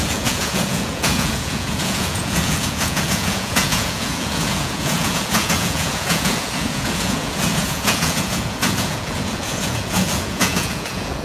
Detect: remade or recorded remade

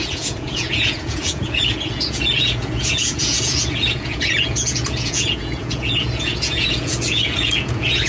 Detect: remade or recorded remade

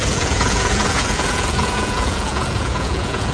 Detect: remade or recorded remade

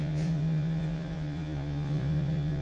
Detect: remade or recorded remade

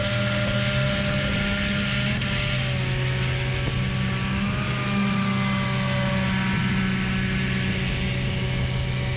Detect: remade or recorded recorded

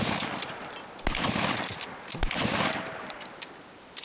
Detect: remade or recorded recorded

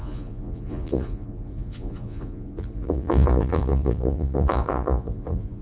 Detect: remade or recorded remade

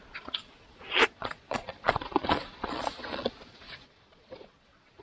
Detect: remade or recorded remade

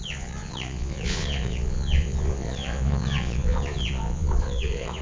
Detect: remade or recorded remade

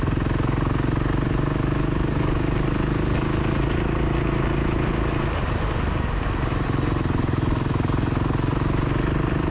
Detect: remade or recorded recorded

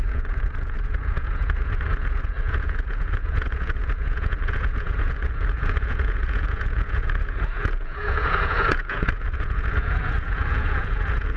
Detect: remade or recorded remade